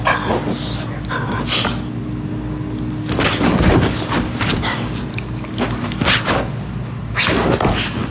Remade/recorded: recorded